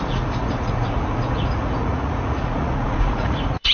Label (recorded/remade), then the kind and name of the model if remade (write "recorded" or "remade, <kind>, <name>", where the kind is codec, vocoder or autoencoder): remade, vocoder, Vocos